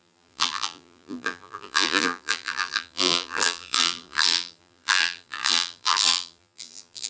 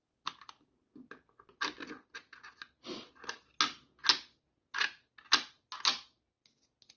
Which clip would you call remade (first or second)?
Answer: first